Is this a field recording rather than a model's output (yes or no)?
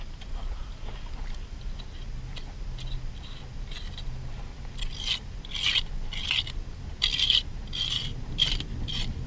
yes